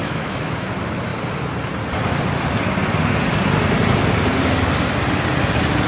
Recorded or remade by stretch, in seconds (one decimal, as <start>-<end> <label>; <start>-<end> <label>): 0.0-0.7 remade; 0.7-5.9 recorded